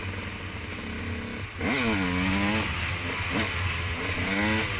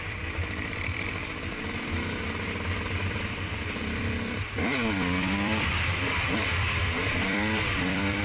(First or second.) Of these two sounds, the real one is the first